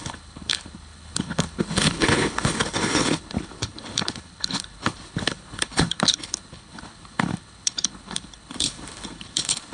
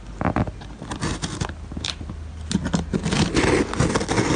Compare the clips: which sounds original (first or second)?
second